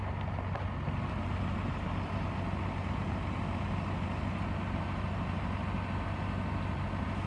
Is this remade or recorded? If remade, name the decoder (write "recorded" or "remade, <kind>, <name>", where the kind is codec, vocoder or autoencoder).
recorded